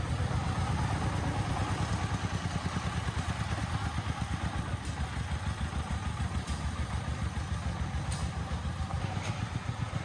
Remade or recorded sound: recorded